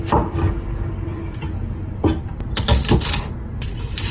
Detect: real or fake fake